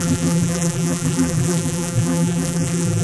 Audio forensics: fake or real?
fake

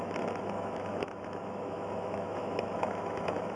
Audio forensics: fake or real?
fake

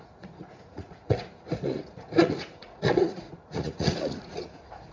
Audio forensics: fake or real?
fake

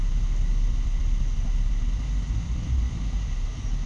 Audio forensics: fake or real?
real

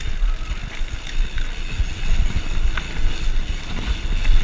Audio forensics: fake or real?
real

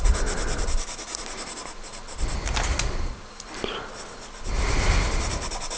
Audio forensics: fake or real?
real